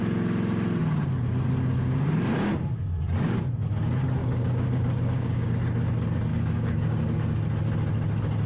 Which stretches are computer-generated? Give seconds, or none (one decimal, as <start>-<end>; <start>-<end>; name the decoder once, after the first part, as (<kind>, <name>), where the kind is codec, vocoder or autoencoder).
4.2-5.5 (codec, DAC); 6.3-7.0